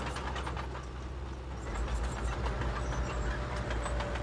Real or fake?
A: real